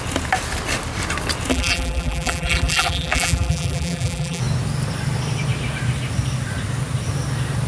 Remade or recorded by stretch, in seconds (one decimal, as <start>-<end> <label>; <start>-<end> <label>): 0.0-1.5 recorded; 1.5-4.4 remade; 4.4-7.7 recorded